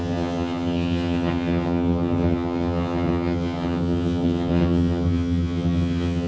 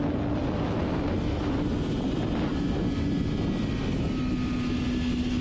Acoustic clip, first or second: second